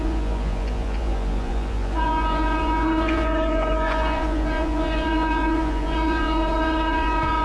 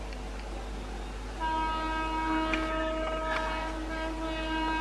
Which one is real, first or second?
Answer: second